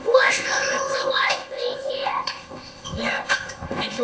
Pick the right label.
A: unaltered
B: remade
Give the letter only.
B